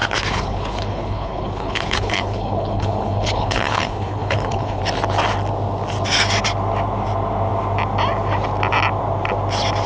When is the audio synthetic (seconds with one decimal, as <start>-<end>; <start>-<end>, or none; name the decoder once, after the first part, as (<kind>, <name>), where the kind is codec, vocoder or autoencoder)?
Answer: 0.0-4.8 (codec, HILCodec)